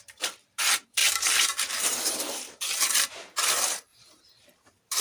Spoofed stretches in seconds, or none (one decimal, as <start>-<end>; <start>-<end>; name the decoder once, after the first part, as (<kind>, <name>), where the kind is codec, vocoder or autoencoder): 0.0-5.0 (vocoder, BigVGAN v2)